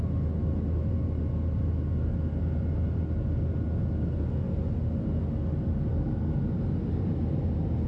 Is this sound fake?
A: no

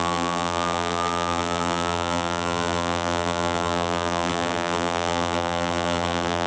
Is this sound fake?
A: yes